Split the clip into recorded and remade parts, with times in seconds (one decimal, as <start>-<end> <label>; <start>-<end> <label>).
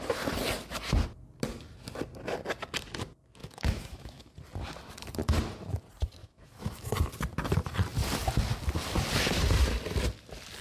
0.0-3.4 recorded; 3.4-4.3 remade; 4.3-6.2 recorded; 6.2-6.9 remade; 6.9-10.6 recorded